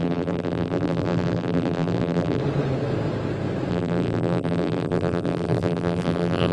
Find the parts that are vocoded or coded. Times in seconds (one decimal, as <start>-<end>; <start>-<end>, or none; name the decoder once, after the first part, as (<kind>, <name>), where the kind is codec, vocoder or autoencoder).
0.0-2.4 (vocoder, BigVGAN v2); 3.7-6.5

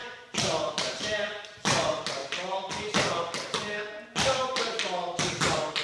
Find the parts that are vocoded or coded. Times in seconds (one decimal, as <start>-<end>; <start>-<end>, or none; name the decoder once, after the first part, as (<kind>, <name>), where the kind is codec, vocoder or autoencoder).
0.0-2.2 (vocoder, BigVGAN v2)

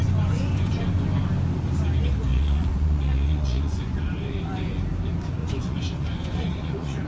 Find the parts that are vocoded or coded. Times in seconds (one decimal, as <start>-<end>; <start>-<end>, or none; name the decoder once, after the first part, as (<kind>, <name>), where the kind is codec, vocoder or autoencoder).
0.0-0.7 (vocoder, Vocos); 2.3-4.4; 5.4-7.1

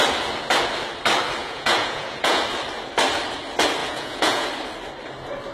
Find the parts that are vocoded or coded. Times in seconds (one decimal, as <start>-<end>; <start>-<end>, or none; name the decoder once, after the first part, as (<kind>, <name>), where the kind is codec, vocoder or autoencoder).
1.4-2.4 (vocoder, Vocos); 3.8-4.5

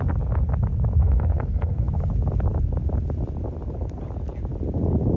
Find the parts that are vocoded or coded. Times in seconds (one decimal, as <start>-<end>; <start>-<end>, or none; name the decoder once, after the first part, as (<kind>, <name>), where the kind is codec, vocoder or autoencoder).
1.0-2.1 (codec, SNAC)

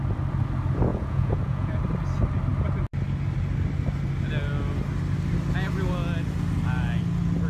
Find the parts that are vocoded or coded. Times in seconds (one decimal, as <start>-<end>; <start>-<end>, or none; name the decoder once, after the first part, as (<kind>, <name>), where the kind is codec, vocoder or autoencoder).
0.9-1.8 (vocoder, Vocos)